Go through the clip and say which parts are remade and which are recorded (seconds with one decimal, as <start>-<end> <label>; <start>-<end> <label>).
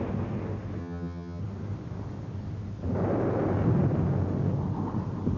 0.0-0.8 recorded; 0.8-1.4 remade; 1.4-5.4 recorded